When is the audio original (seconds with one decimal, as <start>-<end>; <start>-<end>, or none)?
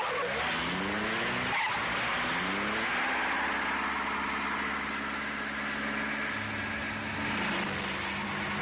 0.0-8.6